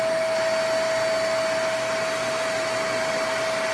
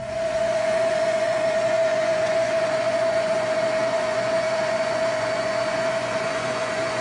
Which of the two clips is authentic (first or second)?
first